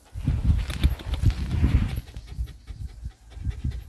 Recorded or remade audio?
recorded